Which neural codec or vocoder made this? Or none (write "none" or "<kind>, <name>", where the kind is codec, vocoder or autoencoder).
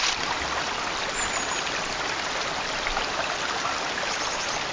none